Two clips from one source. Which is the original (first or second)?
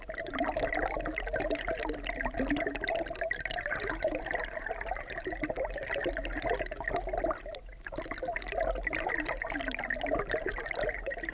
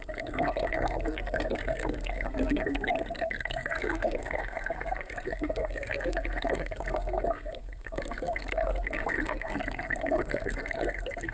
first